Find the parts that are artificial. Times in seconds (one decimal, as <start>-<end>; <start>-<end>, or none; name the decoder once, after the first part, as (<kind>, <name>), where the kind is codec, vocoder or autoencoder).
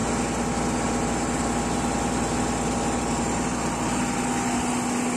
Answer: none